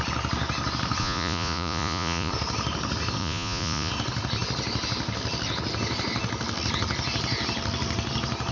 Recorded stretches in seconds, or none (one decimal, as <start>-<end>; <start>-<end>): 0.0-1.0; 2.3-3.2; 3.9-8.5

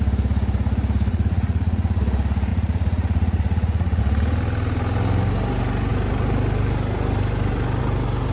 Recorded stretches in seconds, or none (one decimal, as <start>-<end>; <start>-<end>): 0.0-1.1; 2.0-2.5; 4.0-8.3